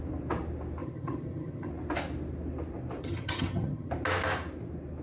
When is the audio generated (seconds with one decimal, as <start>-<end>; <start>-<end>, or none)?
0.8-1.7; 3.0-3.9

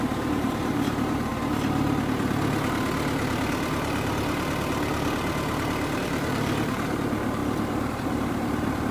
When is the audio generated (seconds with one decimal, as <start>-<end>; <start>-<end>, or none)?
0.0-1.3; 6.0-8.9

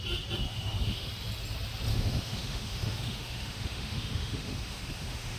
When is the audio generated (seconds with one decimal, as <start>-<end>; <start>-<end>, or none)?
0.5-1.1; 1.9-5.4

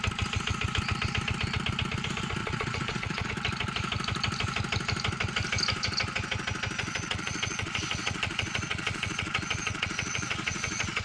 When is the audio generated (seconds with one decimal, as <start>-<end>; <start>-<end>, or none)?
2.4-3.3; 6.8-11.0

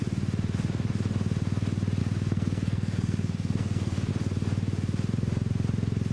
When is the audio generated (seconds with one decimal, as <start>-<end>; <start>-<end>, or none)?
2.0-4.1

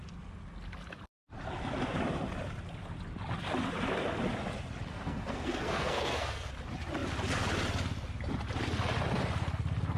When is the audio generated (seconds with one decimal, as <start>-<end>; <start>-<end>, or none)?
4.9-6.5